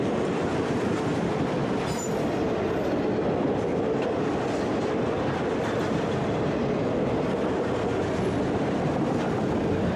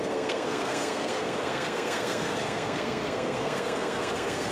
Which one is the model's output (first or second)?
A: second